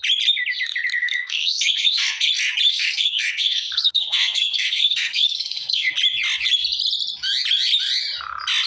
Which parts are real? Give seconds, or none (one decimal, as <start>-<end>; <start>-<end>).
0.0-1.0; 2.3-2.7; 5.9-8.7